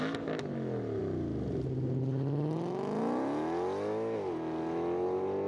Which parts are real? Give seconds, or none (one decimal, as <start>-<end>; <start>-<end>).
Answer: 0.0-5.5